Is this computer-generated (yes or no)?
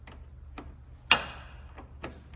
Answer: no